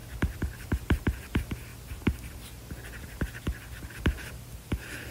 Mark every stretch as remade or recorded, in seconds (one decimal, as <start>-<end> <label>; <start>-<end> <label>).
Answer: 0.0-5.1 recorded